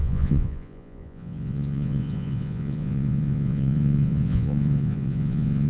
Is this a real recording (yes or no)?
no